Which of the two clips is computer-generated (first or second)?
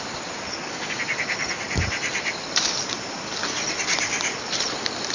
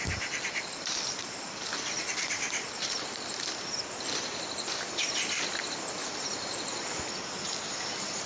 second